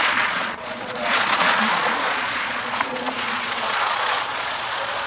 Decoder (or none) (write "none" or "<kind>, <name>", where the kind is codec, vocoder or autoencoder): vocoder, Vocos